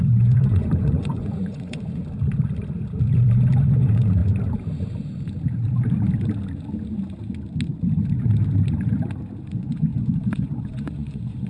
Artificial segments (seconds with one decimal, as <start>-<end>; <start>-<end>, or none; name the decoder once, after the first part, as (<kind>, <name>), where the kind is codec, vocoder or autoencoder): 0.0-2.0 (vocoder, Vocos); 3.6-4.2; 9.5-11.5